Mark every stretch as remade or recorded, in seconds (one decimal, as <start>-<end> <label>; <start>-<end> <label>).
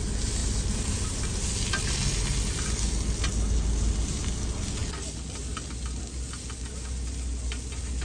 0.0-0.4 recorded; 0.4-1.0 remade; 1.0-8.0 recorded